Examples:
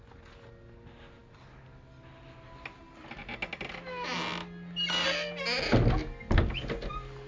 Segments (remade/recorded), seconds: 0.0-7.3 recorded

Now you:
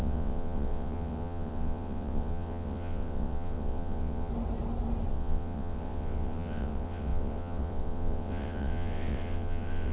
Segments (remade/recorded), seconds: 0.0-4.3 remade; 4.3-5.1 recorded; 5.1-9.9 remade

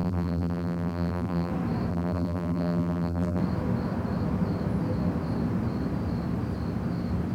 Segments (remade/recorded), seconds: 0.0-1.5 remade; 1.5-1.9 recorded; 1.9-3.4 remade; 3.4-7.3 recorded

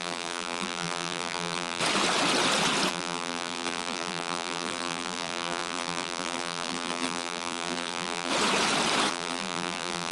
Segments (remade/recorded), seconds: 0.0-1.8 remade; 1.8-2.9 recorded; 2.9-8.3 remade; 8.3-9.1 recorded; 9.1-10.1 remade

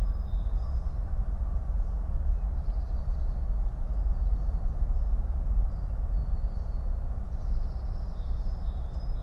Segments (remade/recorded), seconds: 0.0-9.2 recorded

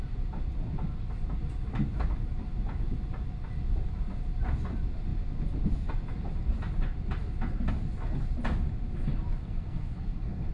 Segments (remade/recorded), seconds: 0.0-9.4 recorded; 9.4-10.5 remade

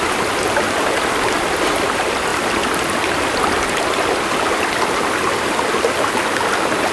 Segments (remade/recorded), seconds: 0.0-6.9 recorded

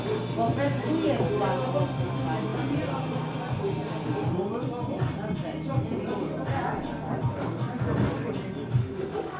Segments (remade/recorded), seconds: 0.0-8.8 recorded; 8.8-9.4 remade